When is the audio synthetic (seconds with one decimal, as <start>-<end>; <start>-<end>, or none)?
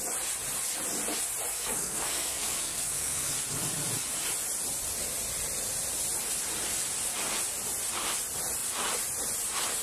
1.5-3.3